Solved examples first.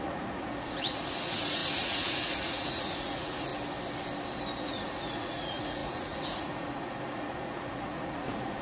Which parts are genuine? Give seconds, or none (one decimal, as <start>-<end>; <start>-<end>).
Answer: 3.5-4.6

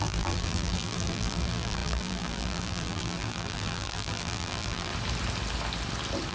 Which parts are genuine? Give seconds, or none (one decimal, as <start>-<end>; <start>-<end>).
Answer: 4.9-6.3

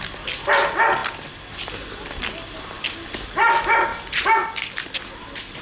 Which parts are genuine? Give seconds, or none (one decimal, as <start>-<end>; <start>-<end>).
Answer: 0.0-5.6

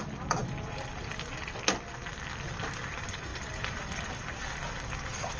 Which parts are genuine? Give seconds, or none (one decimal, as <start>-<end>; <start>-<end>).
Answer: 0.0-5.4

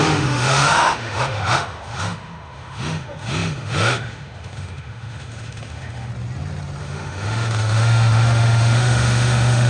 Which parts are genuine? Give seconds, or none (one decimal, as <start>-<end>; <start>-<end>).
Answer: 6.1-6.8

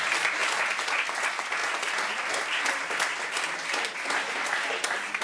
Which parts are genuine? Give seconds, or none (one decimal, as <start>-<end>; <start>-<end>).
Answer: 0.0-5.2

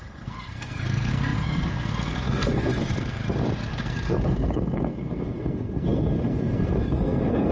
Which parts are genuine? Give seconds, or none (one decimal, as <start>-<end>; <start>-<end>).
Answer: 3.2-3.7

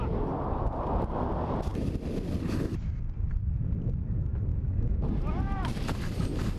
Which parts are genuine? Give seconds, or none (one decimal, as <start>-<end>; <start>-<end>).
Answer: 0.0-4.5; 5.1-6.6